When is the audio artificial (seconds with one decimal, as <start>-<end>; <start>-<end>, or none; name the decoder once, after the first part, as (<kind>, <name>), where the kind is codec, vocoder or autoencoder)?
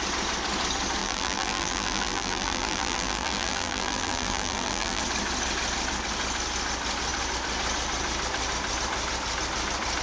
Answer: 1.0-5.0 (vocoder, BigVGAN v2)